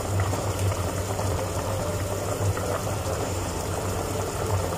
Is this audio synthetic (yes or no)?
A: yes